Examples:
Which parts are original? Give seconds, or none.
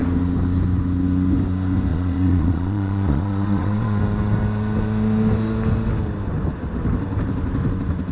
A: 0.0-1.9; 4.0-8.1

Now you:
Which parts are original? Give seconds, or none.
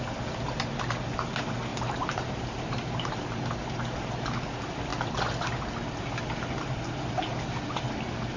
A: 0.0-1.7; 3.1-8.4